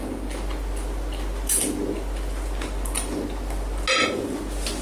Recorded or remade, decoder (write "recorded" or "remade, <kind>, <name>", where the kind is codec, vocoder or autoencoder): recorded